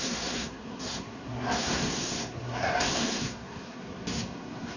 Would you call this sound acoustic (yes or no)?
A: no